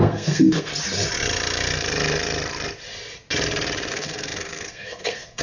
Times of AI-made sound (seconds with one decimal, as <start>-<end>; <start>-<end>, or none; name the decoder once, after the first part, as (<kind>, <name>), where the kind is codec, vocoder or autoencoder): 0.0-0.7 (codec, SNAC); 3.9-5.4